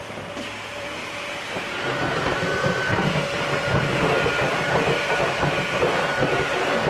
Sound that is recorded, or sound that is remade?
remade